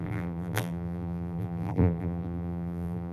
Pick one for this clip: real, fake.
fake